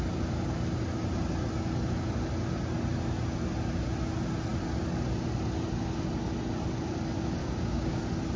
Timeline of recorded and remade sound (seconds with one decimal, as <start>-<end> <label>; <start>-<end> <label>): 0.0-7.4 recorded; 7.4-8.0 remade; 8.0-8.4 recorded